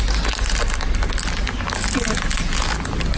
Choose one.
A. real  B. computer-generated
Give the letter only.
A